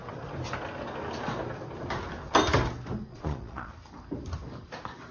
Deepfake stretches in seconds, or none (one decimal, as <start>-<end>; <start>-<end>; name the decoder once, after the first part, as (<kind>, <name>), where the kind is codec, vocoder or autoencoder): 3.1-3.7 (vocoder, Vocos)